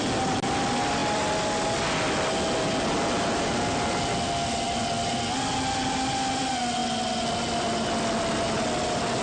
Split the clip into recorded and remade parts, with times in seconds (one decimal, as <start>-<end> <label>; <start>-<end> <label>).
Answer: 0.0-9.2 recorded